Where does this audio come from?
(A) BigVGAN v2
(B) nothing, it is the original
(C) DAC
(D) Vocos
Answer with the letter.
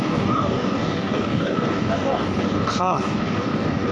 C